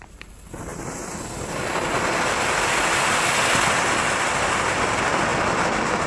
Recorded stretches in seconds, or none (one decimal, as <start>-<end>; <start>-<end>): 5.3-6.1